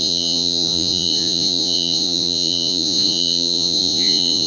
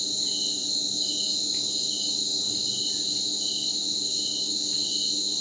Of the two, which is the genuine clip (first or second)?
second